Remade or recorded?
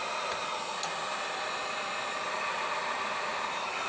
recorded